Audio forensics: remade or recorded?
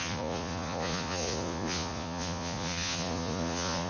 remade